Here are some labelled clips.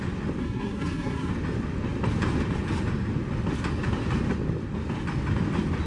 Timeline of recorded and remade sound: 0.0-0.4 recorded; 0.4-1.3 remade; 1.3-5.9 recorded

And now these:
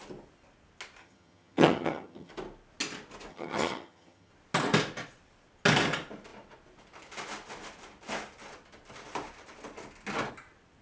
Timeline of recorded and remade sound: 0.0-1.0 recorded; 1.0-2.3 remade; 2.3-3.3 recorded; 3.3-4.3 remade; 4.3-10.8 recorded

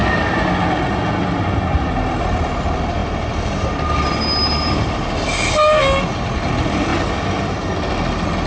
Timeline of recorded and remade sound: 0.0-8.5 recorded

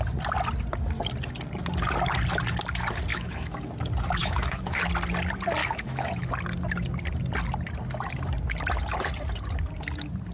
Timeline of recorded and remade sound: 0.0-3.1 recorded; 3.1-3.7 remade; 3.7-4.2 recorded; 4.2-4.8 remade; 4.8-5.6 recorded; 5.6-6.3 remade; 6.3-10.3 recorded

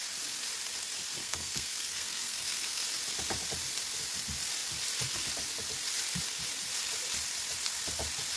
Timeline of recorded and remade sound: 0.0-1.2 recorded; 1.2-2.8 remade; 2.8-8.4 recorded

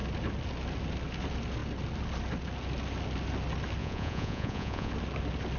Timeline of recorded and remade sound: 0.0-3.8 recorded; 3.8-4.9 remade; 4.9-5.6 recorded

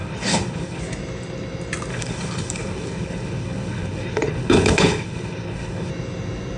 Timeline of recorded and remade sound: 0.0-0.8 remade; 0.8-1.9 recorded; 1.9-5.9 remade; 5.9-6.6 recorded